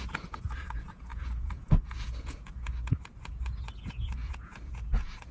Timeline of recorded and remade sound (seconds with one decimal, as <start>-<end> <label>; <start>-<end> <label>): 0.0-5.3 remade